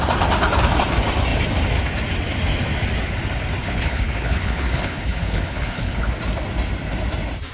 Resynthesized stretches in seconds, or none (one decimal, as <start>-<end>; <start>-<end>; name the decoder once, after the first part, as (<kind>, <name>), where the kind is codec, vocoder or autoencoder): 3.6-6.1 (codec, HILCodec)